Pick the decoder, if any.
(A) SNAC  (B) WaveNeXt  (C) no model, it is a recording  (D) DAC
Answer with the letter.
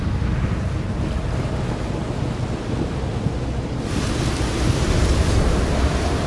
C